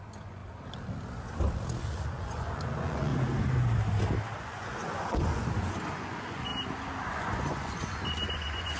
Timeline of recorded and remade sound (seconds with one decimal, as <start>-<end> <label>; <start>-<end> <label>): 0.0-0.4 remade; 0.4-1.8 recorded; 1.8-3.1 remade; 3.1-4.4 recorded; 4.4-6.5 remade; 6.5-7.1 recorded; 7.1-8.8 remade